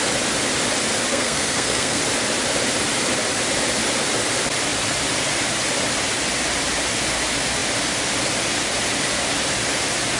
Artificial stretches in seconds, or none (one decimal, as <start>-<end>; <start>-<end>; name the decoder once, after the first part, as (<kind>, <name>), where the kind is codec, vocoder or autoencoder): 1.1-2.0 (codec, SNAC)